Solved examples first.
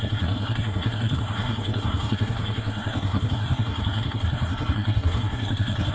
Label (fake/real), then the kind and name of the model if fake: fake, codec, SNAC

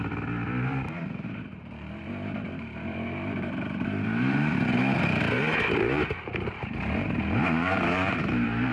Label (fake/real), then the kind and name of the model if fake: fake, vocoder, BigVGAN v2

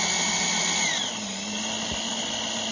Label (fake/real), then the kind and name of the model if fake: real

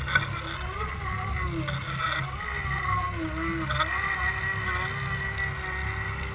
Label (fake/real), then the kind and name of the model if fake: real